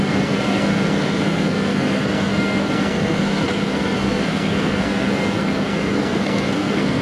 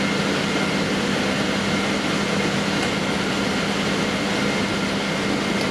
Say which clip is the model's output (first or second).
first